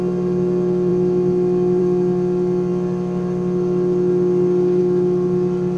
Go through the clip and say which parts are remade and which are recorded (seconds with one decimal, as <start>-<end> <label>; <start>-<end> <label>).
0.0-5.8 recorded